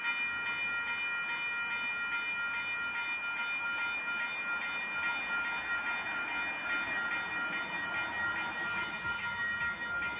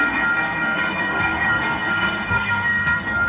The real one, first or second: first